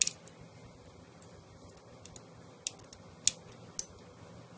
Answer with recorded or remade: recorded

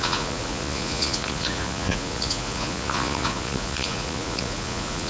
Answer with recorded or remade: remade